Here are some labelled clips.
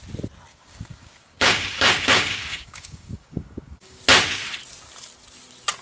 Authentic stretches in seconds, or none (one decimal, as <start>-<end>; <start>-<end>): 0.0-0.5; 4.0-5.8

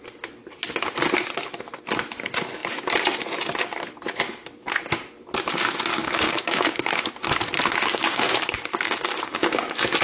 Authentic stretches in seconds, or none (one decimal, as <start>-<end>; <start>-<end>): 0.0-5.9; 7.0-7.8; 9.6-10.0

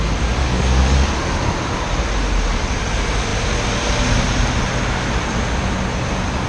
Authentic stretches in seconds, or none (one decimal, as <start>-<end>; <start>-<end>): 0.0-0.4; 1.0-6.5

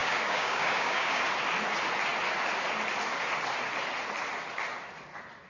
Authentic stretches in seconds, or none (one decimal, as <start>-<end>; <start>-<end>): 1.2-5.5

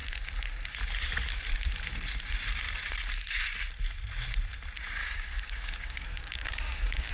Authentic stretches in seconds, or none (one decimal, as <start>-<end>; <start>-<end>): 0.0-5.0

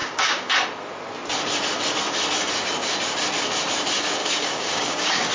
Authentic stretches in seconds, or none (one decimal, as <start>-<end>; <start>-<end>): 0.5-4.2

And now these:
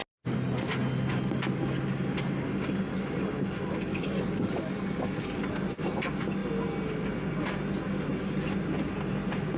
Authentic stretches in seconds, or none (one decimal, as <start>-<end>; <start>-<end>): 0.0-3.9; 5.4-9.6

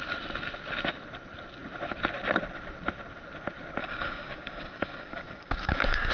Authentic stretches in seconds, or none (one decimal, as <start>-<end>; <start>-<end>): 0.0-3.8